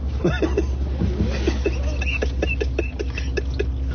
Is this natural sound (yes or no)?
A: yes